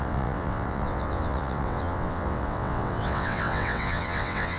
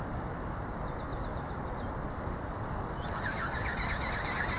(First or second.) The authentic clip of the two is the second